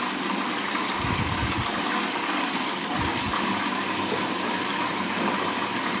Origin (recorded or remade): recorded